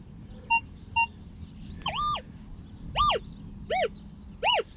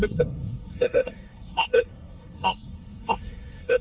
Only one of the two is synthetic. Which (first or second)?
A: second